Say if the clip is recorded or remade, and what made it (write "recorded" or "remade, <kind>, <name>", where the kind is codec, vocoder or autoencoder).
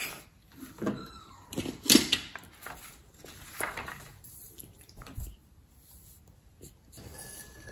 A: remade, vocoder, BigVGAN v2